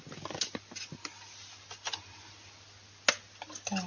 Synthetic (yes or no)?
no